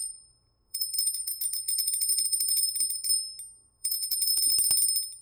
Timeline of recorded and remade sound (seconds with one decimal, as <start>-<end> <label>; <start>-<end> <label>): 0.0-3.1 remade; 3.1-3.6 recorded; 3.6-4.5 remade; 4.5-5.2 recorded